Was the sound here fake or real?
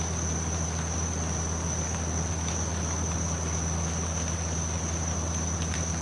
real